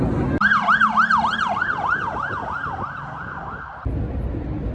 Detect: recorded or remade recorded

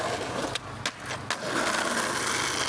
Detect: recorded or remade recorded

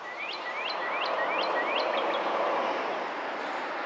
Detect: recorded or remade remade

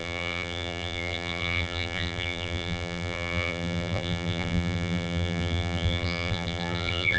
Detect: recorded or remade remade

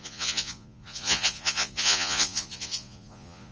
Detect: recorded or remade remade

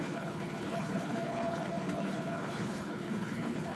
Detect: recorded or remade remade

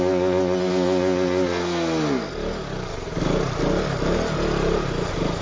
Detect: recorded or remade recorded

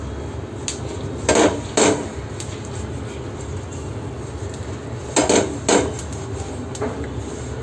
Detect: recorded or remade recorded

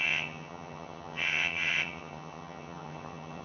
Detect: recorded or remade remade